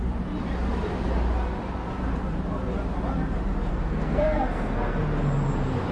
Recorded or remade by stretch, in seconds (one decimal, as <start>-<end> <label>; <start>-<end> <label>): 0.0-3.7 recorded; 3.7-5.0 remade; 5.0-5.9 recorded